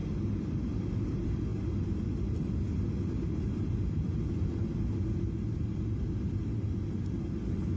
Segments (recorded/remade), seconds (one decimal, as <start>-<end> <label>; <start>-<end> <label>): 0.0-7.8 recorded